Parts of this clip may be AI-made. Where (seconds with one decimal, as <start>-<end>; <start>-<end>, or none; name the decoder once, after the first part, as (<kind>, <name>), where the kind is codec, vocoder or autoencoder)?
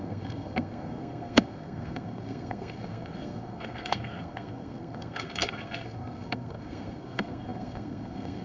0.0-8.4 (codec, SNAC)